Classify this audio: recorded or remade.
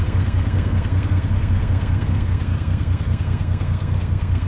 remade